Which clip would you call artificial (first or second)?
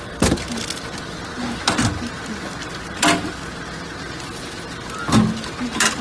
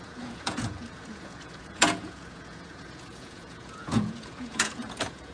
second